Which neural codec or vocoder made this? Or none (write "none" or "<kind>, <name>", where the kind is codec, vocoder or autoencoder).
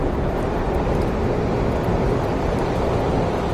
none